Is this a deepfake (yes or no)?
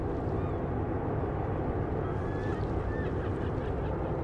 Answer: no